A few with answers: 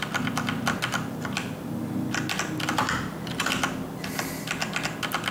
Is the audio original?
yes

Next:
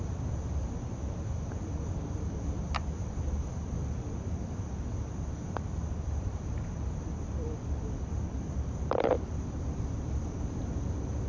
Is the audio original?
no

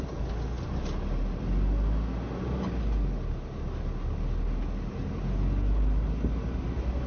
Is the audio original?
yes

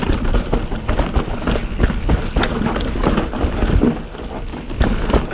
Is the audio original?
yes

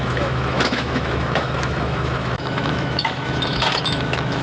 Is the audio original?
no